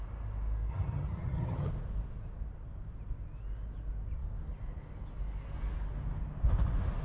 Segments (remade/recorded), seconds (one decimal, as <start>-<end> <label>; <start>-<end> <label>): 0.0-0.7 recorded; 0.7-1.7 remade; 1.7-7.0 recorded